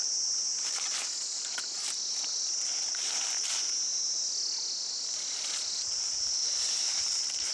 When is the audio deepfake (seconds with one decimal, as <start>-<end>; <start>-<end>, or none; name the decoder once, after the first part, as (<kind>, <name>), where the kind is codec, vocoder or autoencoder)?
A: 6.4-7.5 (vocoder, BigVGAN v2)